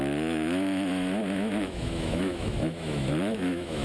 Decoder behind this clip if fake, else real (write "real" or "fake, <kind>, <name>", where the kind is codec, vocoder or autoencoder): fake, autoencoder, DAC-VAE